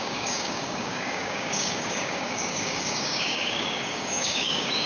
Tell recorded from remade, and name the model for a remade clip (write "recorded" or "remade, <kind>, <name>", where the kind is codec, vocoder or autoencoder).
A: remade, codec, DAC